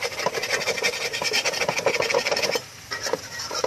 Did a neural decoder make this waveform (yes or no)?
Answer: no